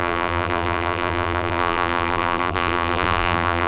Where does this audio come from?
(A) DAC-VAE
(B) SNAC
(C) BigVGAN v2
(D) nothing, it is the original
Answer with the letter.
C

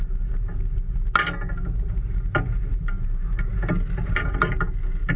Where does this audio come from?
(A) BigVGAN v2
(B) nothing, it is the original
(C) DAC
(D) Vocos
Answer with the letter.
B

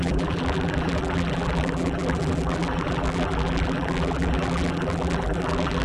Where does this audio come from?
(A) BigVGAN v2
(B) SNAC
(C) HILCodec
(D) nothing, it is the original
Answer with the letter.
A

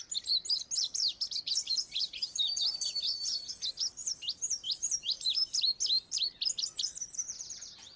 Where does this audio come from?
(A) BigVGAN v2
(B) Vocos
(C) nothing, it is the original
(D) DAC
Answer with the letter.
A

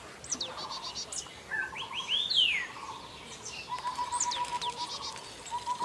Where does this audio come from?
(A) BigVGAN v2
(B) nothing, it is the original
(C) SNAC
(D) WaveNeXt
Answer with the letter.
B